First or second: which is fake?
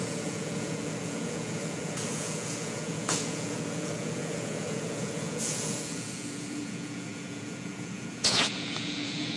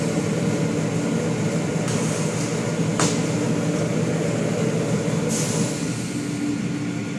first